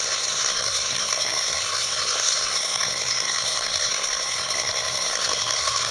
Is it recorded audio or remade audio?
remade